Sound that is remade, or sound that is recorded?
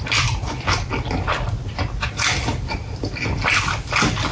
recorded